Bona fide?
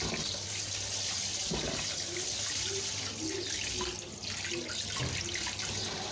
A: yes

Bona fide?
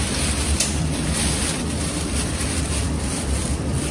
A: no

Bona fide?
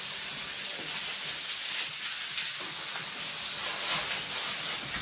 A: yes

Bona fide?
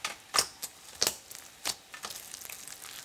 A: yes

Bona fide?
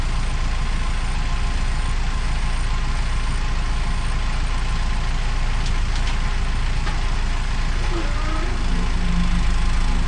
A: yes